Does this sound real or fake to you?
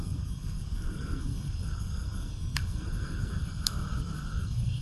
fake